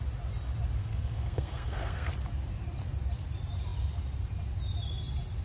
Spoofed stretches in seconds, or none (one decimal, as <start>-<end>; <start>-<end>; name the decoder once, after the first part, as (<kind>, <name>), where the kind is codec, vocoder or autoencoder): 0.8-2.1 (codec, SNAC)

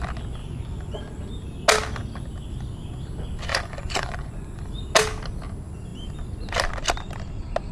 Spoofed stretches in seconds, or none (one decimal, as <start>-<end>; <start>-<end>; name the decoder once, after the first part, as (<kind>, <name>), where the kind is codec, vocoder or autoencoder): 0.4-1.0 (vocoder, Vocos); 3.5-4.7

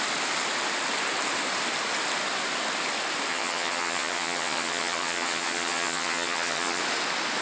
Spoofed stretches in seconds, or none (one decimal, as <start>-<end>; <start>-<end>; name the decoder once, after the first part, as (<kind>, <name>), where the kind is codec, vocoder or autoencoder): 3.3-6.8 (vocoder, HiFi-GAN)

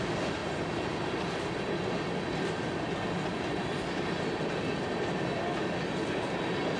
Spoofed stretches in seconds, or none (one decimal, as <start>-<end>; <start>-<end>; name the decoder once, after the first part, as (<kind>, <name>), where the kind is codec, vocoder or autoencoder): none

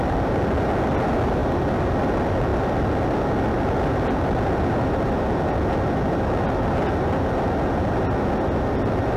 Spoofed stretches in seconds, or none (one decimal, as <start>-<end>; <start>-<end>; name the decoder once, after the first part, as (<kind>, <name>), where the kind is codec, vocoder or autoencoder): none